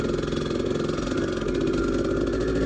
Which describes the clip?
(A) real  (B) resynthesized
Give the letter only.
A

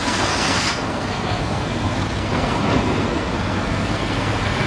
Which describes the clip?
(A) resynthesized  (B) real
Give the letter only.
A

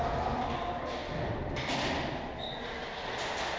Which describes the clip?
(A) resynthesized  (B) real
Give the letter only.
B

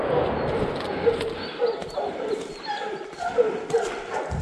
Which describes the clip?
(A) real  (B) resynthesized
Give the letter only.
A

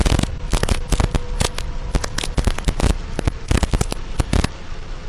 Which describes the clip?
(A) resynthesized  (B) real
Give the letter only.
B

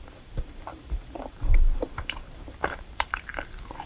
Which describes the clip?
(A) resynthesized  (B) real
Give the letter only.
A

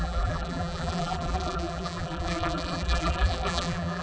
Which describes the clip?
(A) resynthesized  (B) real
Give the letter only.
A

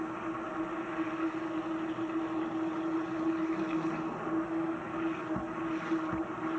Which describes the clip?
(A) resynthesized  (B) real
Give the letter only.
B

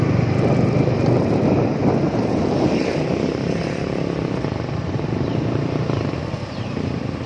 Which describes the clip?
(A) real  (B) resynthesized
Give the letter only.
A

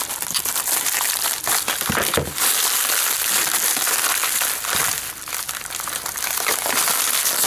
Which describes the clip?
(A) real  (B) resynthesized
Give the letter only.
B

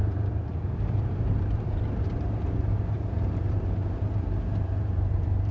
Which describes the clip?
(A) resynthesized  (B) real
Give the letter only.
A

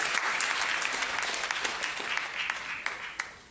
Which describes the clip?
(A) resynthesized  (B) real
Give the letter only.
B